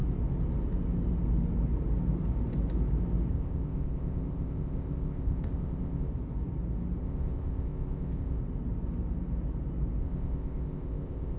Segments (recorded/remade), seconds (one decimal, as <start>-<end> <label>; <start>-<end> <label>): 0.0-3.3 recorded; 3.3-6.1 remade; 6.1-7.0 recorded; 7.0-8.4 remade; 8.4-10.0 recorded; 10.0-11.4 remade